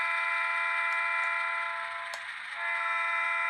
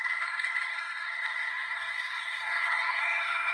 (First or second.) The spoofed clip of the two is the second